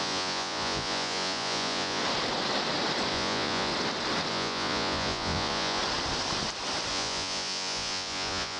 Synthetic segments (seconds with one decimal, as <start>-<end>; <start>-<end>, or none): 0.0-2.0; 3.1-3.7; 4.3-5.8; 6.9-8.6